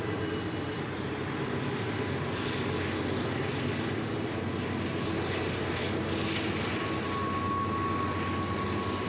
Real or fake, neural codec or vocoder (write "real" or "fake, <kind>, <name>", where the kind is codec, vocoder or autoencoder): real